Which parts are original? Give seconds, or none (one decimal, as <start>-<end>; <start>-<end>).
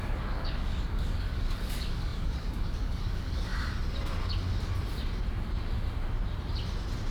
3.5-7.1